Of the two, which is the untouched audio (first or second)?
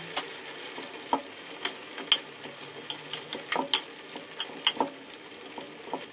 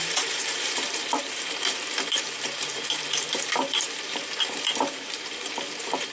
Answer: first